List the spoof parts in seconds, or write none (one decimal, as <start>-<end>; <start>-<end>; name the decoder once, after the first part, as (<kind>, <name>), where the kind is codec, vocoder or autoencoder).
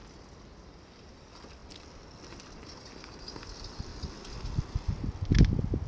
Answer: none